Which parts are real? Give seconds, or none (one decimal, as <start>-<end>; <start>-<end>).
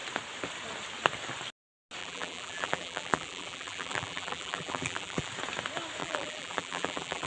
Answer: 0.0-2.0; 5.3-6.0